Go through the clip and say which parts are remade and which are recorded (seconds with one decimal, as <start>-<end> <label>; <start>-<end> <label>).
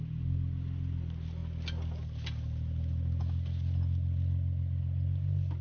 0.0-5.6 recorded